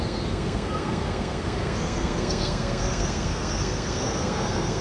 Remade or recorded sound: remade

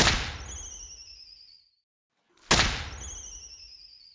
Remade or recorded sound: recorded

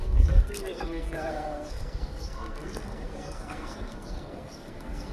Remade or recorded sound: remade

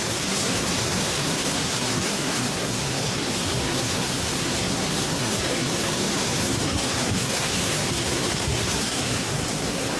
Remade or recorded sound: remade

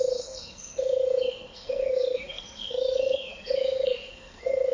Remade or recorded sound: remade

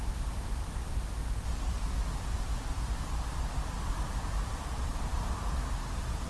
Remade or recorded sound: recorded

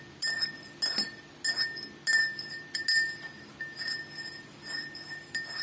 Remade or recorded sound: recorded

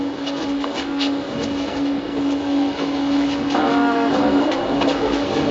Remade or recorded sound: remade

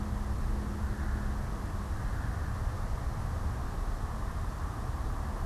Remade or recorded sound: recorded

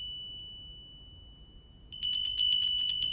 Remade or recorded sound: recorded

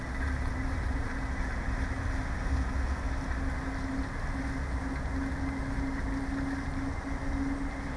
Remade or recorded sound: recorded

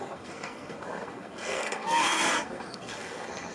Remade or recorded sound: remade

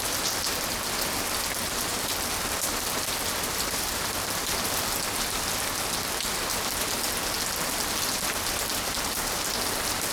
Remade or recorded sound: recorded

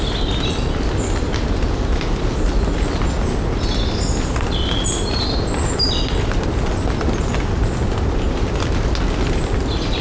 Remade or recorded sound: recorded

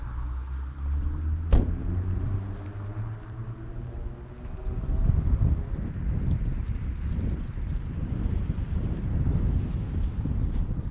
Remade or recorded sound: recorded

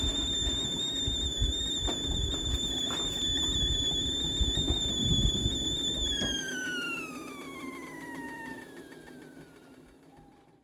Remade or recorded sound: recorded